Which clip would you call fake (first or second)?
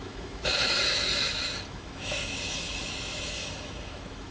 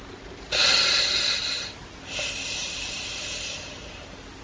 first